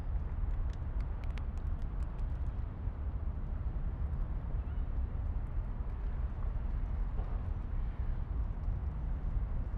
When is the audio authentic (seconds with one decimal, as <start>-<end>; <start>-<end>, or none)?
0.0-1.8; 5.6-9.8